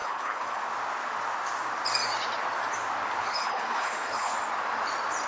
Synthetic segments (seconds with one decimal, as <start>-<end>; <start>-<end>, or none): 0.0-0.6; 3.2-4.3